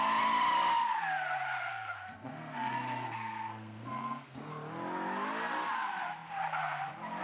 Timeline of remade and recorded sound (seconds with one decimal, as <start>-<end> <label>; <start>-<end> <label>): 0.0-1.7 recorded; 1.7-4.5 remade; 4.5-7.2 recorded